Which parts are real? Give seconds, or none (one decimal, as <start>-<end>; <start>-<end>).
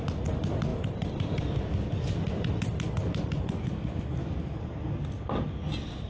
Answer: 0.0-6.1